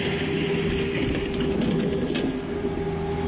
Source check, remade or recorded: recorded